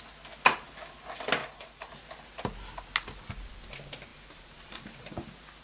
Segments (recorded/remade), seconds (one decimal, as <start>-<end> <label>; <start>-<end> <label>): 0.0-1.4 recorded; 1.4-1.9 remade; 1.9-4.1 recorded; 4.1-5.1 remade; 5.1-5.6 recorded